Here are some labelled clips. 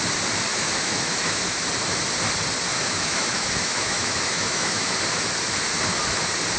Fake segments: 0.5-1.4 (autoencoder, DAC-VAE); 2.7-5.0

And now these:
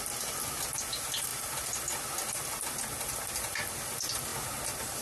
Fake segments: none

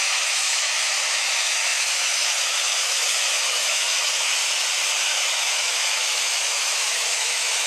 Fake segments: 0.0-4.4 (autoencoder, DAC-VAE); 5.0-7.7

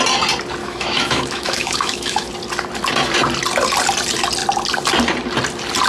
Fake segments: 0.6-2.3 (autoencoder, DAC-VAE)

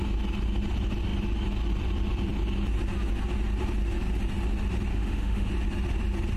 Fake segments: 4.9-5.5 (autoencoder, DAC-VAE)

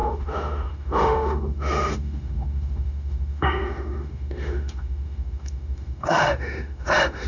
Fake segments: 0.0-7.3 (autoencoder, DAC-VAE)

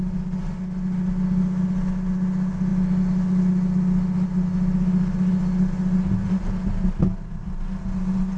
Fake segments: none

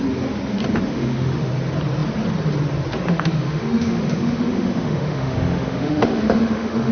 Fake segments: 0.9-1.5 (autoencoder, DAC-VAE); 3.1-6.9